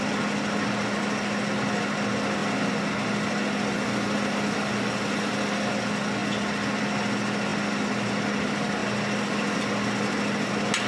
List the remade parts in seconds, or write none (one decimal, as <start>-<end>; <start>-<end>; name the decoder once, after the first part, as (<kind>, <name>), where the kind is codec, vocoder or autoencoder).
none